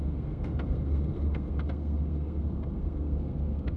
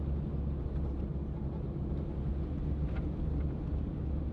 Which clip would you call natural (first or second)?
second